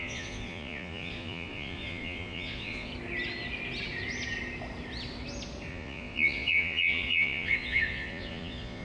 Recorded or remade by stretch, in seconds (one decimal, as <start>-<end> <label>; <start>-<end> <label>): 0.0-2.9 remade; 2.9-5.7 recorded; 5.7-8.8 remade